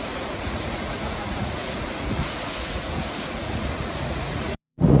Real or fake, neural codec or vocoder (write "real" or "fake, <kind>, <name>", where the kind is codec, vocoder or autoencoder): fake, vocoder, Vocos